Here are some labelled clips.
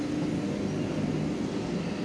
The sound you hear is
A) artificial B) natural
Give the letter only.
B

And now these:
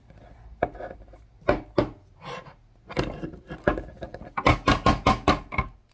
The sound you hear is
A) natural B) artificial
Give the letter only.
A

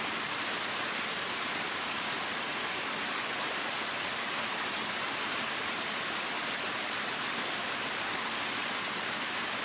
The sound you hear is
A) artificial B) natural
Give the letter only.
B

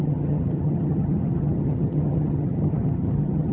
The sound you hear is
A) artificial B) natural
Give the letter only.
A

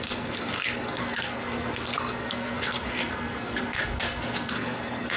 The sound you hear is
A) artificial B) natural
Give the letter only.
A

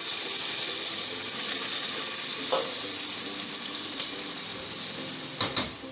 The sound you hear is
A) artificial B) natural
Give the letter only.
B